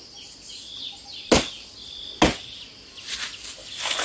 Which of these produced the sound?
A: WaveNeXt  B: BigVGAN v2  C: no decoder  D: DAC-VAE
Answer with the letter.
C